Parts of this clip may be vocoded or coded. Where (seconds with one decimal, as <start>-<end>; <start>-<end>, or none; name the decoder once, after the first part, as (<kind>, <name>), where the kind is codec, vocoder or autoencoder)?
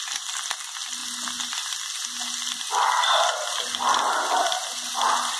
none